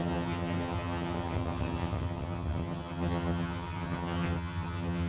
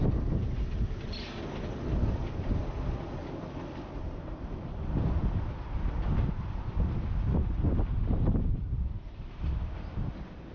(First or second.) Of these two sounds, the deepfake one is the first